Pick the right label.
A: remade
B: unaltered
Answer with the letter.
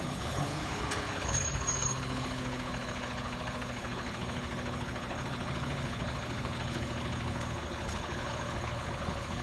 A